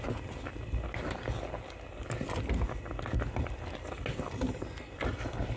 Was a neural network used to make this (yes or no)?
no